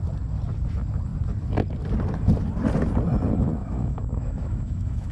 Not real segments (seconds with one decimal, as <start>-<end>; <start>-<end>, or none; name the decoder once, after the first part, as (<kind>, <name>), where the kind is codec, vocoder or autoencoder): 3.6-5.1 (autoencoder, DAC-VAE)